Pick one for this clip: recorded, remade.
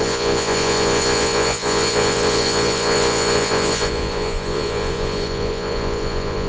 remade